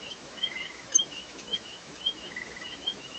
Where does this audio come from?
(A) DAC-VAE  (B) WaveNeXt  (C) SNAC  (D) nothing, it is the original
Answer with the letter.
A